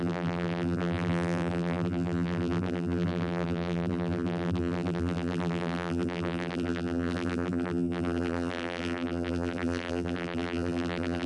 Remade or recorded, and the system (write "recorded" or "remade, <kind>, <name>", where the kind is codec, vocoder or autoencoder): remade, vocoder, BigVGAN v2